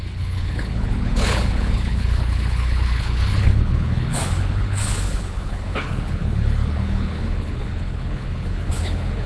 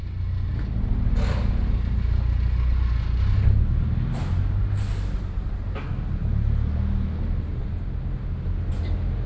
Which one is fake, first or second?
first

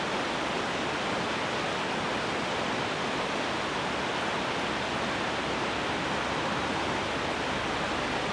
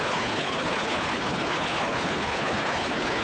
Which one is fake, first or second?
second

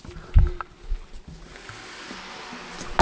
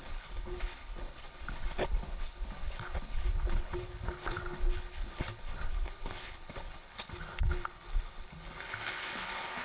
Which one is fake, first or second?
second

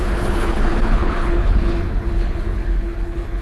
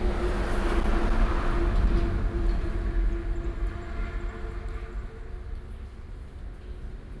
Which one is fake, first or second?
first